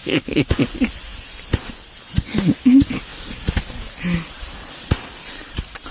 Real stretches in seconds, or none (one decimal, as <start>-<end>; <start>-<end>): 0.5-5.9